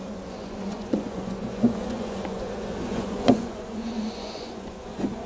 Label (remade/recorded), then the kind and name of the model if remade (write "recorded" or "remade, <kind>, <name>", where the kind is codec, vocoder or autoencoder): remade, vocoder, Vocos